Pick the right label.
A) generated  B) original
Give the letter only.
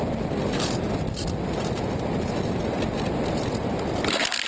B